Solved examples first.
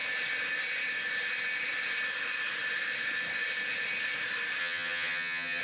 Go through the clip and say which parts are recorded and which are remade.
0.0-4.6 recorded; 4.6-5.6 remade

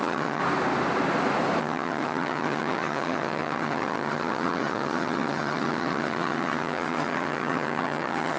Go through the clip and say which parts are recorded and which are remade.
0.0-0.4 remade; 0.4-1.6 recorded; 1.6-8.4 remade

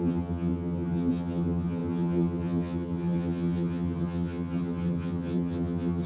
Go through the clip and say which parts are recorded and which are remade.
0.0-6.1 remade

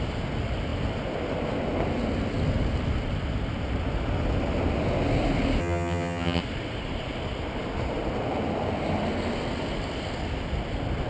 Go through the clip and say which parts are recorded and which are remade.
0.0-5.6 recorded; 5.6-6.4 remade; 6.4-11.1 recorded

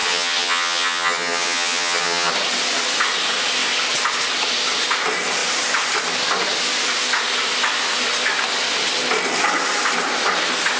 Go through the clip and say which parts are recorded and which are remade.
0.0-2.3 remade; 2.3-10.8 recorded

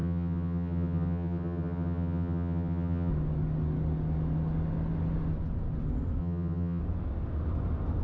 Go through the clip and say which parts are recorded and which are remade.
0.0-3.1 remade; 3.1-6.2 recorded; 6.2-6.8 remade; 6.8-8.0 recorded